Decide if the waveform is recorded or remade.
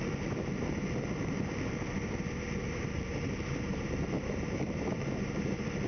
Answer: remade